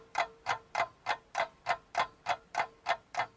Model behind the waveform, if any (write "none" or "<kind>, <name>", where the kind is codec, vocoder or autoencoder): vocoder, BigVGAN v2